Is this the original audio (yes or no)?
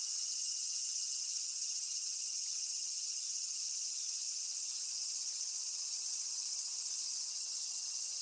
no